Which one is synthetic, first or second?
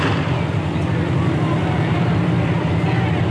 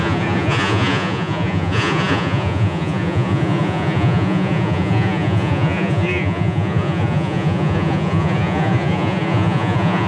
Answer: second